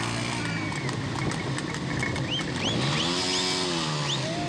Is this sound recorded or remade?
recorded